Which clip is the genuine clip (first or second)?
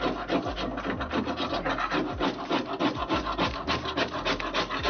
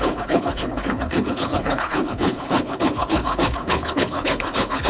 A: first